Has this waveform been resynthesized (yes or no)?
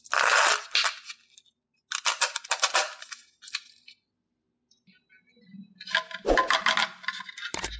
no